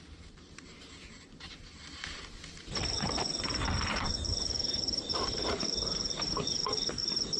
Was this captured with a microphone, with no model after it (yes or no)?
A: no